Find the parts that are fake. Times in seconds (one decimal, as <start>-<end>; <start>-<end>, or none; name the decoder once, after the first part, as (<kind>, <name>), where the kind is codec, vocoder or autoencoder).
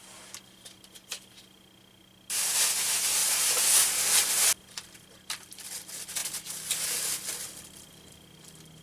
none